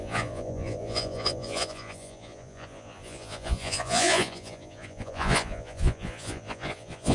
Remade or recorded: remade